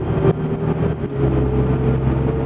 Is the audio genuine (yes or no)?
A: yes